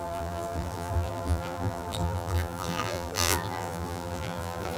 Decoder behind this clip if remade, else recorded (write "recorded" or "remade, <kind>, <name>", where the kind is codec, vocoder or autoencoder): remade, vocoder, BigVGAN v2